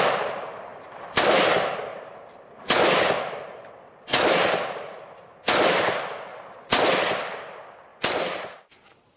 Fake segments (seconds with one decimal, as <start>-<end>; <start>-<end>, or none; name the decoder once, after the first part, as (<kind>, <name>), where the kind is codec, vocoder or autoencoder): 1.9-2.6 (vocoder, BigVGAN v2); 6.3-6.8; 7.9-9.2